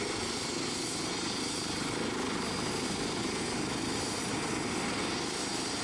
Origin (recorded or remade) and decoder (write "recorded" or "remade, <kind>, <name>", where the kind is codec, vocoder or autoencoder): recorded